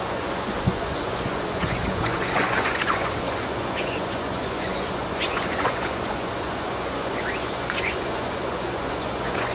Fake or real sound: fake